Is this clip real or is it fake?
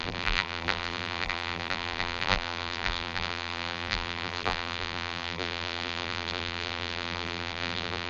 fake